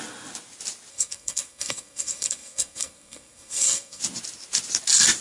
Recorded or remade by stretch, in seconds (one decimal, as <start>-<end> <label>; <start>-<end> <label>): 0.0-0.9 recorded; 0.9-4.0 remade; 4.0-5.2 recorded